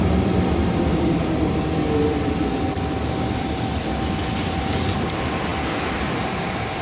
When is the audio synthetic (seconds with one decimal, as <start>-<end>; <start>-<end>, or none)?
0.0-5.5; 6.0-6.8